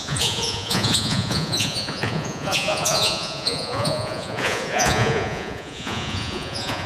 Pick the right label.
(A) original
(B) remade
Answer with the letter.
B